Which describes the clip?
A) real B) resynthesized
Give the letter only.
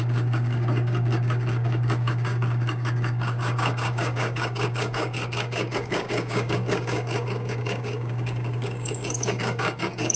B